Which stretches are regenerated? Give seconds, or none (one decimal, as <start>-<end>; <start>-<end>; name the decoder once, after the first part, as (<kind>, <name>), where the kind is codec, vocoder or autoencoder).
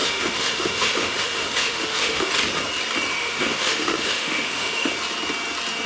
0.0-2.3 (autoencoder, DAC-VAE); 3.1-4.9